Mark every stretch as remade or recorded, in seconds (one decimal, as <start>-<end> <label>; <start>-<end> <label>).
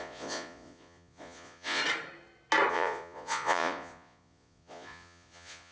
0.0-1.8 remade; 1.8-2.7 recorded; 2.7-5.7 remade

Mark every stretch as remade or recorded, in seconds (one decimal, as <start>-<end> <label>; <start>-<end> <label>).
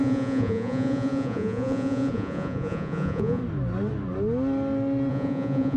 0.0-3.4 remade; 3.4-5.1 recorded; 5.1-5.8 remade